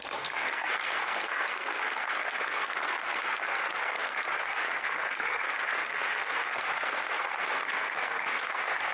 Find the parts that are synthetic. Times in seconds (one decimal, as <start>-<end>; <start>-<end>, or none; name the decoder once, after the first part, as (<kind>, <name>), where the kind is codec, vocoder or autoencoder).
0.0-8.9 (codec, SNAC)